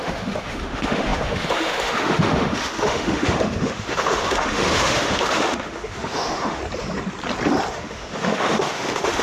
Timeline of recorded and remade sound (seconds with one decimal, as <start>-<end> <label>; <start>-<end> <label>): 0.0-6.6 remade; 6.6-7.7 recorded; 7.7-9.2 remade